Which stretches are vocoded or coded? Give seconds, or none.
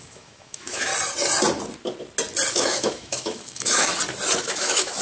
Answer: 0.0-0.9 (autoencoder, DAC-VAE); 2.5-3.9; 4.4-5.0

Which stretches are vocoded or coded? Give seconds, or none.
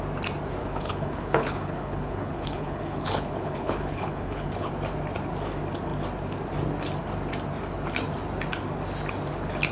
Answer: 0.6-4.7 (codec, HILCodec)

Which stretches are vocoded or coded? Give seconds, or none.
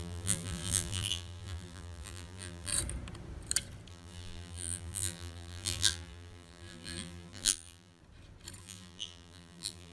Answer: 0.0-2.7 (vocoder, BigVGAN v2); 3.9-8.0; 8.6-9.9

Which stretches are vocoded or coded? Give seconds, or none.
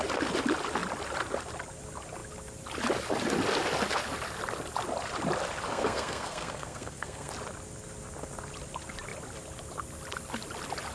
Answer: 5.7-7.3 (codec, SNAC)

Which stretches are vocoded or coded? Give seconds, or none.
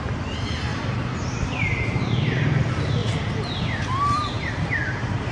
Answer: 0.7-2.2 (vocoder, BigVGAN v2); 3.0-3.6; 4.2-4.8